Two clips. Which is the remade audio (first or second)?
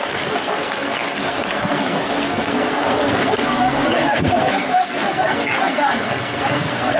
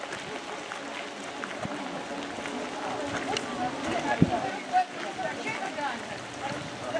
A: first